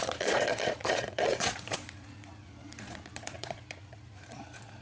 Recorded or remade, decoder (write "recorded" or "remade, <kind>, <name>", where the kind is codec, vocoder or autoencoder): remade, vocoder, Vocos